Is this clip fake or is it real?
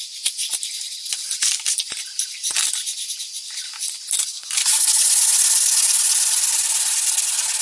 real